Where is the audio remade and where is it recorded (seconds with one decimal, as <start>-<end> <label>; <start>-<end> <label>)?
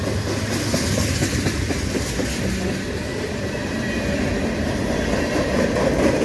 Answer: 0.0-6.2 recorded